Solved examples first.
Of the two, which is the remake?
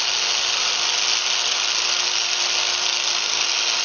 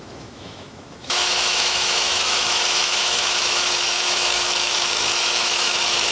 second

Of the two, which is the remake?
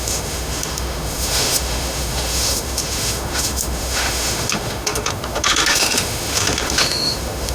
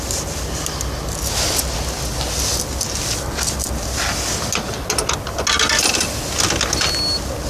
first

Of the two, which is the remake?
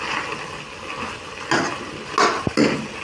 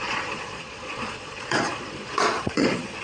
second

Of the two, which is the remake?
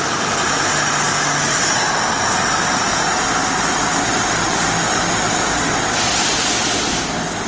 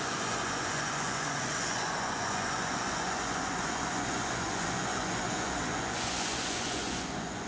second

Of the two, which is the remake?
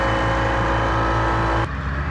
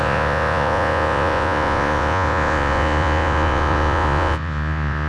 second